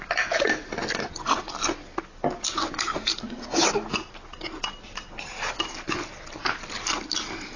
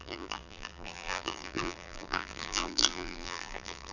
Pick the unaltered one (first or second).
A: first